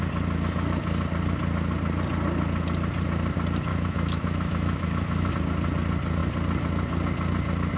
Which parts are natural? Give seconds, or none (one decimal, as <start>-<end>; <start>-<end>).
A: 0.0-3.7; 5.3-7.8